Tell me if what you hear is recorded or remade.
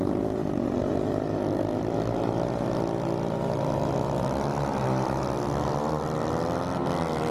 recorded